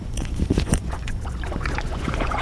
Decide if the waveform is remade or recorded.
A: remade